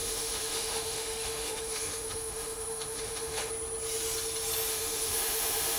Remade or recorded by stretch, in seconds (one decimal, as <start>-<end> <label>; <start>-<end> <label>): 0.0-3.5 remade; 3.5-4.7 recorded; 4.7-5.8 remade